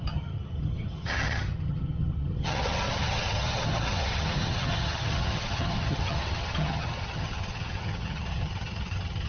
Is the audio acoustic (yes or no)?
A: no